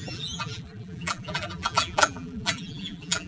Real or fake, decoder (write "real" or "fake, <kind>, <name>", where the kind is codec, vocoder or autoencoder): fake, vocoder, BigVGAN v2